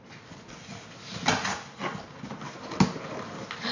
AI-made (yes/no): no